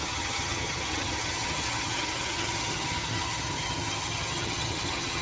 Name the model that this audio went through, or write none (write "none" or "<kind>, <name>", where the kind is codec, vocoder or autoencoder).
vocoder, HiFi-GAN